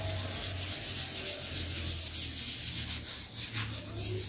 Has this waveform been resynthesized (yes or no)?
no